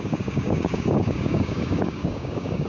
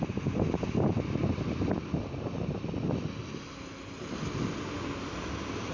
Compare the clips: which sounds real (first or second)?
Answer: second